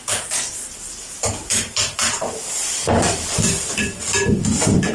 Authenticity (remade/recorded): recorded